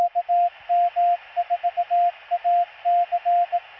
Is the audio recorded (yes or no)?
yes